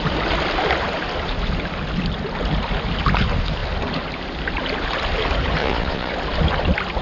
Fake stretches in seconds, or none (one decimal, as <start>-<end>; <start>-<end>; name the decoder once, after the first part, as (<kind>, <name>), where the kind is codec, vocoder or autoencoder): 5.6-6.1 (vocoder, Vocos)